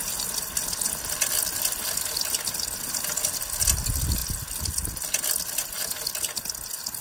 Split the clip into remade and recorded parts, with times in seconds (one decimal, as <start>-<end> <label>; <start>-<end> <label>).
0.0-7.0 recorded